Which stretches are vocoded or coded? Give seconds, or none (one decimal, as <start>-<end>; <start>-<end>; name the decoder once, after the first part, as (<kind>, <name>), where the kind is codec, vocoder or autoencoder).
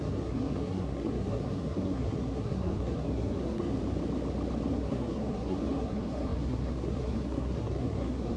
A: 0.0-3.8 (codec, SNAC); 4.7-8.4